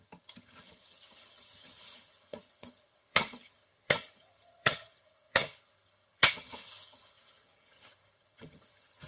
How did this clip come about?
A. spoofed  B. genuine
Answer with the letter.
A